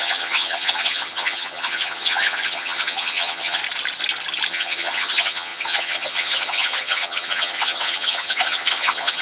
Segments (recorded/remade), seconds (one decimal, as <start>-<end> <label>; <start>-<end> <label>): 0.0-3.6 remade; 3.6-4.5 recorded; 4.5-9.2 remade